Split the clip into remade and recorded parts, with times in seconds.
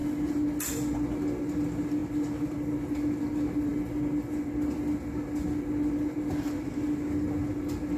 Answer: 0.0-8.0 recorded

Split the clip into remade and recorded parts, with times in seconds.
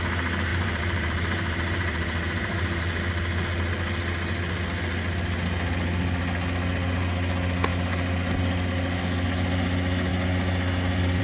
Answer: 0.0-0.5 recorded; 0.5-2.8 remade; 2.8-11.2 recorded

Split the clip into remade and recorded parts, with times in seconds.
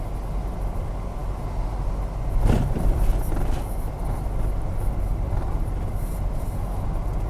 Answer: 0.0-1.2 recorded; 1.2-3.1 remade; 3.1-5.1 recorded; 5.1-6.1 remade; 6.1-7.3 recorded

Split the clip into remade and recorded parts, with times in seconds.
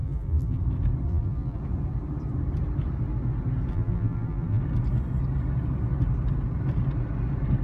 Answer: 0.0-0.6 remade; 0.6-1.1 recorded; 1.1-1.6 remade; 1.6-3.7 recorded; 3.7-4.6 remade; 4.6-7.6 recorded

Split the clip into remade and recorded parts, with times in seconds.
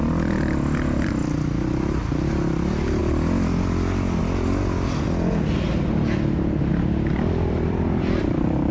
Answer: 0.0-6.7 recorded; 6.7-8.7 remade